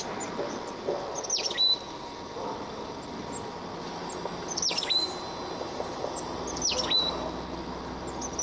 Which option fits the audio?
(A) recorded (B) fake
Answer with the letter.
A